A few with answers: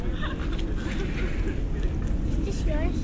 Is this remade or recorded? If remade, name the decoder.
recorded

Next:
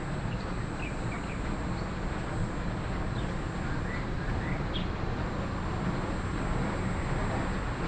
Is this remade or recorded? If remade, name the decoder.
recorded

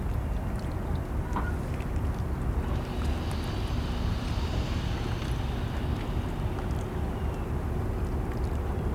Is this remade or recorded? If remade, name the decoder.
recorded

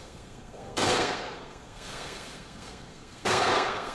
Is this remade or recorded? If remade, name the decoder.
remade, codec, SNAC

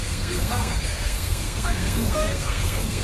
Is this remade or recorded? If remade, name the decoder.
remade, codec, SNAC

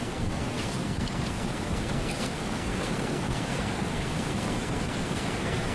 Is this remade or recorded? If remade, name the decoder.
remade, codec, SNAC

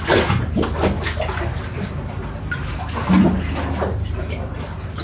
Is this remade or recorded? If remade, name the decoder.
recorded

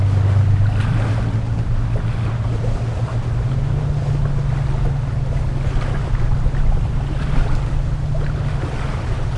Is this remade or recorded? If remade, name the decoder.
recorded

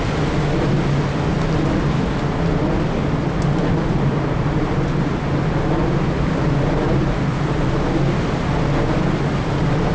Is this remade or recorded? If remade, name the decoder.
recorded